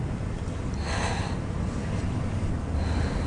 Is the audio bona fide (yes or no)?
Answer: yes